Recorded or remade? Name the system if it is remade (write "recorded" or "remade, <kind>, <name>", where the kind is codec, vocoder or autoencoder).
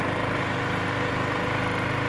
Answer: recorded